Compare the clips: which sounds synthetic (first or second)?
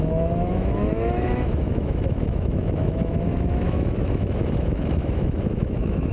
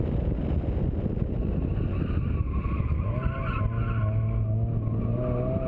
first